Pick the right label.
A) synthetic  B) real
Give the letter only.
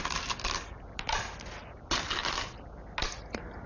B